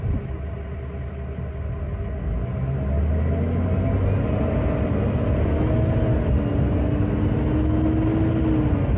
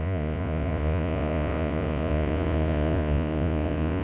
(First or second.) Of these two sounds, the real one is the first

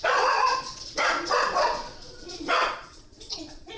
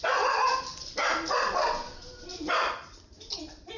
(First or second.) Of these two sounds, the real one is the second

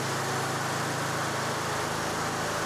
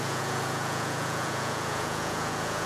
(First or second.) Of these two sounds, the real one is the first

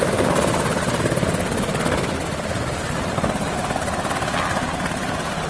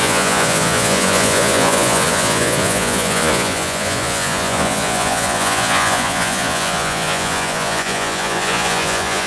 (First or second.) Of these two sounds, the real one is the first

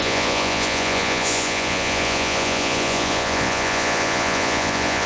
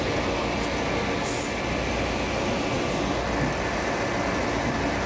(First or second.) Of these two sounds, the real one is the second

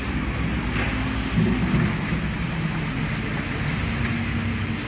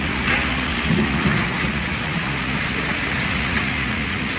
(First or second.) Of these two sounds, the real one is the first